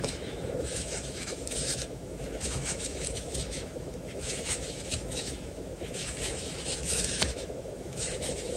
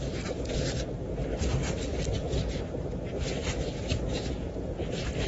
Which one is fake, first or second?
first